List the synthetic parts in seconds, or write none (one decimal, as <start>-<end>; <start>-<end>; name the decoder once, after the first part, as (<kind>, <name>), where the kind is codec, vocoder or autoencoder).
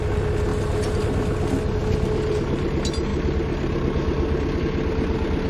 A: none